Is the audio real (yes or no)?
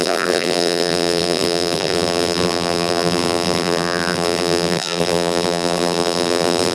no